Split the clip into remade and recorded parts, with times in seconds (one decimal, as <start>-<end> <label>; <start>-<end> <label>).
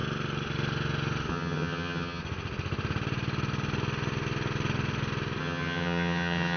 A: 0.0-1.3 recorded; 1.3-2.2 remade; 2.2-5.4 recorded; 5.4-6.6 remade